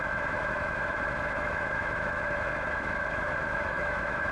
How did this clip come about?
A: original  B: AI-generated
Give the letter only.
B